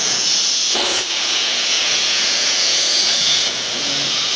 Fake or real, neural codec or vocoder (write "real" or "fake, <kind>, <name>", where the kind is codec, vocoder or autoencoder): fake, vocoder, Vocos